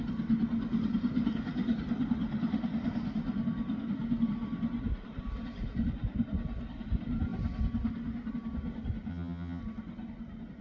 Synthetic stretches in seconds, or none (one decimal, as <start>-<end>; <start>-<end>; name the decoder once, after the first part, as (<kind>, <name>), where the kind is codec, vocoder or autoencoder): 9.1-9.6 (vocoder, HiFi-GAN)